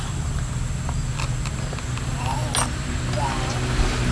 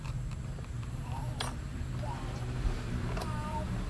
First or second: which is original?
first